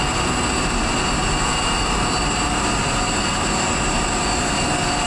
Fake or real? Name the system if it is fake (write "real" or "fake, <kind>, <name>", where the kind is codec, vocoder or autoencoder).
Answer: real